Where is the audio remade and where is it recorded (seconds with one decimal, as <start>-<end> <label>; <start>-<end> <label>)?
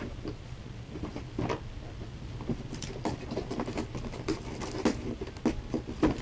0.0-1.1 remade; 1.1-2.5 recorded; 2.5-3.9 remade; 3.9-6.2 recorded